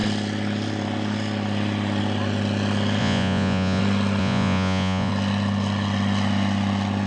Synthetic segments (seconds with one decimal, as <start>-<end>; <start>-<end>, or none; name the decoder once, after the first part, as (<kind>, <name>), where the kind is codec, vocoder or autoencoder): 3.0-3.8 (vocoder, Vocos); 4.2-5.1